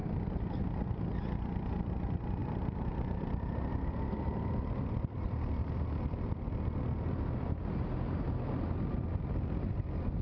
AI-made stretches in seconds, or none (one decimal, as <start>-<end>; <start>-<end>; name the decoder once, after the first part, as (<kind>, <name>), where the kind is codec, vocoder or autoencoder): 2.4-3.7 (vocoder, BigVGAN v2)